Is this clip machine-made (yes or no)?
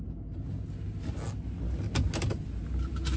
no